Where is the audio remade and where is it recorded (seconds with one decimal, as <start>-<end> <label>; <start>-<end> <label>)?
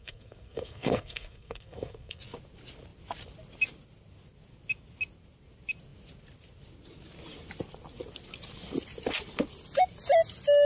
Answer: 0.0-2.2 remade; 2.2-10.6 recorded